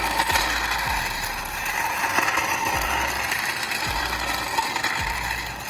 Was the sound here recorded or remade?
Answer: recorded